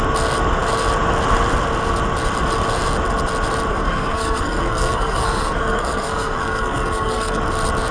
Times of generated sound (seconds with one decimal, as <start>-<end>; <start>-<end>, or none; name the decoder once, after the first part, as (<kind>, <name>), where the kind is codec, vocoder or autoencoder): 3.7-7.4 (codec, SNAC)